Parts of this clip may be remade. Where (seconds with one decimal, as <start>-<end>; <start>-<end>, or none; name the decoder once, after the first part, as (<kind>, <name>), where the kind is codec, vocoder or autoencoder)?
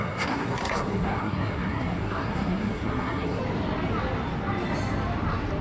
0.0-3.4 (codec, SNAC)